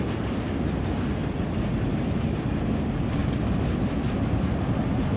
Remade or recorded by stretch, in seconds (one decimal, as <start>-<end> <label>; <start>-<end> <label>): 0.0-5.2 recorded